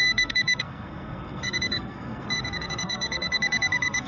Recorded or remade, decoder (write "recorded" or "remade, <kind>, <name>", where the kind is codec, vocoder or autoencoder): remade, codec, SNAC